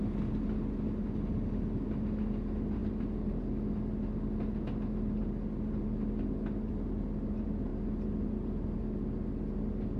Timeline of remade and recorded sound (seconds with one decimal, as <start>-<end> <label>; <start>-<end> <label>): 0.0-10.0 recorded